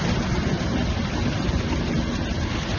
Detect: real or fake real